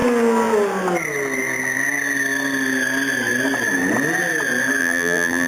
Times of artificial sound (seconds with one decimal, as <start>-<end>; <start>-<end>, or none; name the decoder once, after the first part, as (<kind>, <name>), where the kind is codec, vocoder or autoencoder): 4.8-5.5 (vocoder, BigVGAN v2)